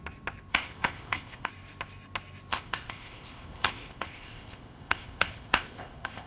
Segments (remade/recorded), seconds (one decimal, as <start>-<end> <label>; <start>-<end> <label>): 0.0-0.5 recorded; 0.5-1.5 remade; 1.5-2.5 recorded; 2.5-6.3 remade